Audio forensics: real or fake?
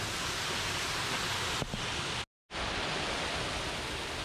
real